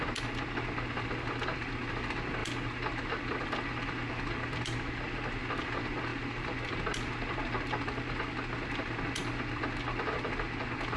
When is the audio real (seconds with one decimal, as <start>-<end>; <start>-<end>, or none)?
0.0-11.0